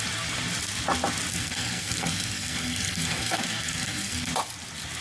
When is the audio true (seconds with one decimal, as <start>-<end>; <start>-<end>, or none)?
0.0-1.3; 4.3-5.0